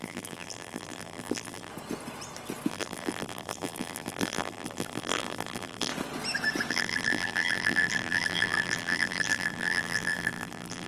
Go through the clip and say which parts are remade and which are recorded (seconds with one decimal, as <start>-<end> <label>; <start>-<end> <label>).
0.0-1.7 remade; 1.7-2.7 recorded; 2.7-5.9 remade; 5.9-6.7 recorded; 6.7-10.9 remade